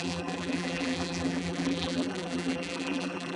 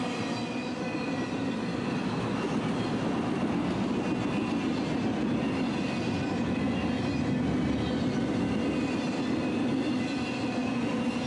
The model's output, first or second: first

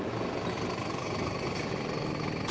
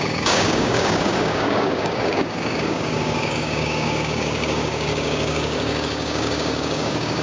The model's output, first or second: second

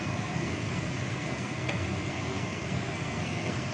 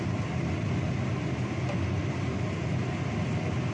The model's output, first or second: first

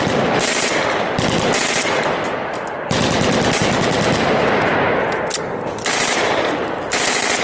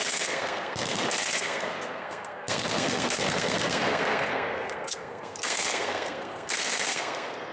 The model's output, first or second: second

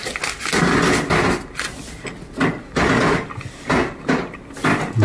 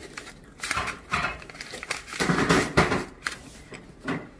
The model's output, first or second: second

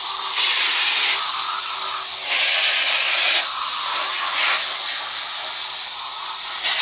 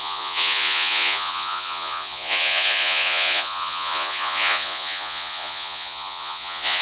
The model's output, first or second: second